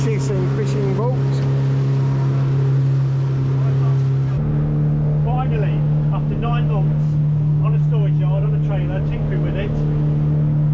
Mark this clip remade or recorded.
recorded